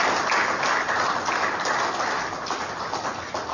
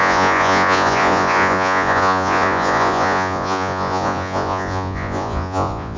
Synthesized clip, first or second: second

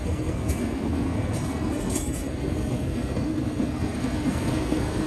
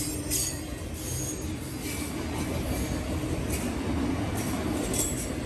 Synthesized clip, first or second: first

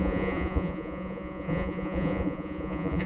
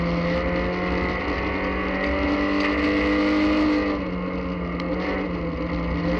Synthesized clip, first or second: first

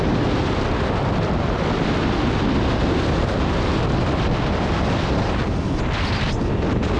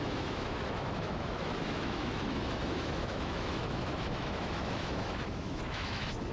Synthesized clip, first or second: second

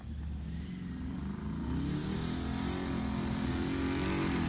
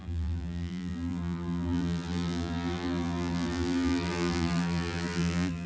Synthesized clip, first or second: second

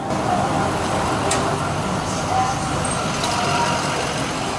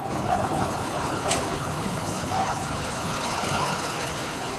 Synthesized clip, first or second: second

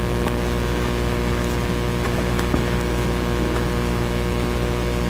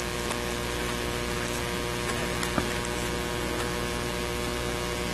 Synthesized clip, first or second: first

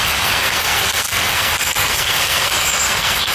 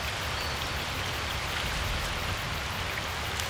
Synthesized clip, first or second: first